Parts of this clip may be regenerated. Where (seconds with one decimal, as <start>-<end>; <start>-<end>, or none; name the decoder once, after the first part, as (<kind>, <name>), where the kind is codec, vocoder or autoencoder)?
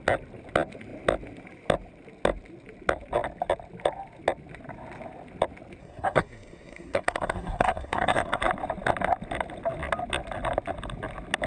5.8-8.4 (codec, SNAC)